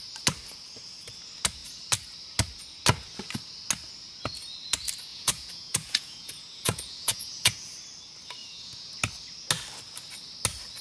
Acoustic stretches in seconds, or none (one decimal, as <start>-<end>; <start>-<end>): 0.0-5.1; 7.7-8.4; 8.9-10.8